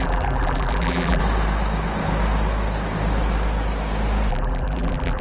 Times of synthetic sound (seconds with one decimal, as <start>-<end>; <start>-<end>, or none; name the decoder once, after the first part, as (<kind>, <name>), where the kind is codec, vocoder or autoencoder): 0.0-1.2 (vocoder, BigVGAN v2); 4.3-5.2